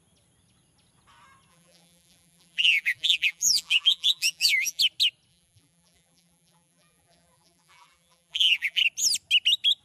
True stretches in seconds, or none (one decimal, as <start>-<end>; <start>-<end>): 0.0-1.5; 4.8-5.3; 8.8-9.8